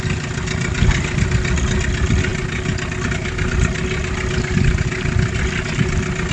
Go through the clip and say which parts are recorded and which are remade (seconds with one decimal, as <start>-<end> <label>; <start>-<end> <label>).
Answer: 0.0-6.3 recorded